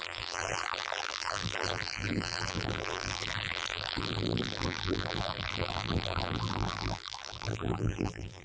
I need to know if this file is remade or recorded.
remade